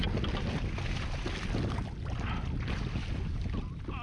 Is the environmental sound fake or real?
real